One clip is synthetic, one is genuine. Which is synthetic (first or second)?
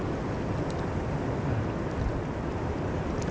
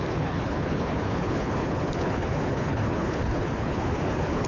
second